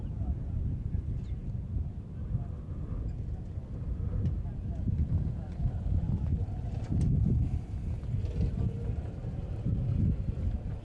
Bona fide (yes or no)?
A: yes